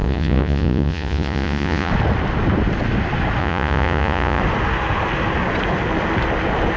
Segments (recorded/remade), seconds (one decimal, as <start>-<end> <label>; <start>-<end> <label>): 0.0-1.9 remade; 1.9-3.4 recorded; 3.4-4.4 remade; 4.4-6.8 recorded